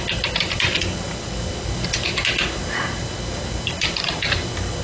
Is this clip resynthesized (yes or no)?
no